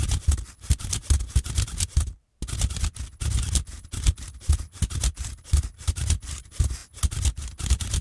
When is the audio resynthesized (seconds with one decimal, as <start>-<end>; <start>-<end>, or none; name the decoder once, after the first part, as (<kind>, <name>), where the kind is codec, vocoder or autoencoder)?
none